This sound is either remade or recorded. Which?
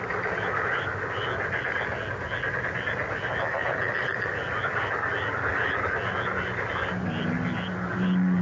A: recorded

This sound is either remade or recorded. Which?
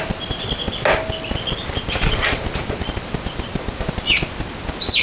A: recorded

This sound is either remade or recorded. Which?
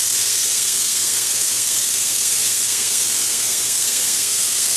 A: remade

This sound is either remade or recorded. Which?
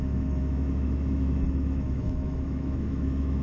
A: remade